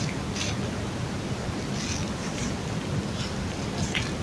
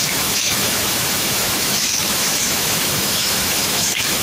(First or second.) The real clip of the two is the first